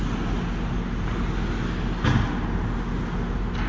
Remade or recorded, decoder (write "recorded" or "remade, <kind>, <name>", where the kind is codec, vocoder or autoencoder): recorded